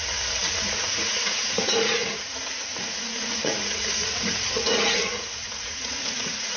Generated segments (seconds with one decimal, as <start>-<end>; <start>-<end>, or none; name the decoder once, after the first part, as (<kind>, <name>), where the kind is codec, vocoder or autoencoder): 0.0-6.6 (vocoder, Vocos)